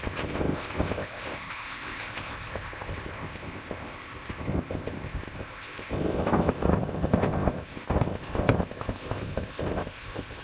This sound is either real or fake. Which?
fake